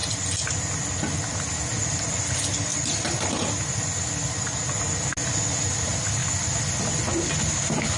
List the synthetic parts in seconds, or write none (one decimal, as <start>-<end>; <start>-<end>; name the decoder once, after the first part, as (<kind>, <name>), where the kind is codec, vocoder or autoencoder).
none